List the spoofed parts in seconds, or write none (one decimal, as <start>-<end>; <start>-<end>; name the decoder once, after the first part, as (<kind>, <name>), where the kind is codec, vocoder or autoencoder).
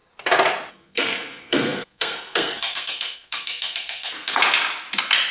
0.7-4.4 (codec, SNAC)